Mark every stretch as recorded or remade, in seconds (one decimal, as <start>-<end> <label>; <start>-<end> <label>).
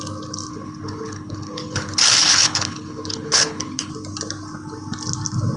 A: 0.0-0.5 recorded; 0.5-3.9 remade; 3.9-5.6 recorded